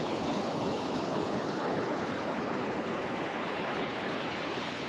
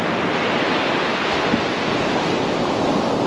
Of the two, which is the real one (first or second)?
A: second